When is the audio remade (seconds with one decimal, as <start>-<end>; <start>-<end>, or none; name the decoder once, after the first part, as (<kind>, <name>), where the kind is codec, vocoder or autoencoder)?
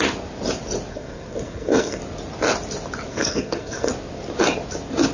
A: 0.9-2.0 (codec, SNAC); 3.1-3.9